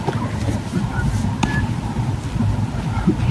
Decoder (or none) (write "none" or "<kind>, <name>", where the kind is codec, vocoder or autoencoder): none